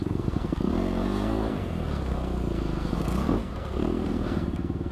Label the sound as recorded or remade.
remade